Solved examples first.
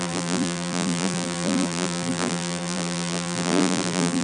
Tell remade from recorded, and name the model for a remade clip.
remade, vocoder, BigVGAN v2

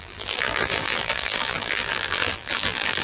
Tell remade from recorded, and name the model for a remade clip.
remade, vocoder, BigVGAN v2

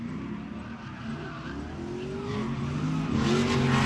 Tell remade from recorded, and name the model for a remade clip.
recorded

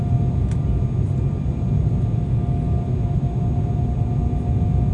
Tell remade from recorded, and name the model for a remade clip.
recorded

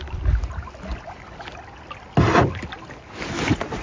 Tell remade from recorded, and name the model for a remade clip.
recorded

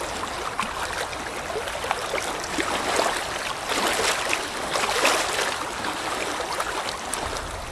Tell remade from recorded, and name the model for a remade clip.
recorded